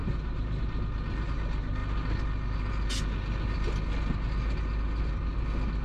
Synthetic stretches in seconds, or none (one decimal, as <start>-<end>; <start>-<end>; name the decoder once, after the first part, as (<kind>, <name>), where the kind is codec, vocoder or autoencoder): 0.0-0.6 (vocoder, BigVGAN v2)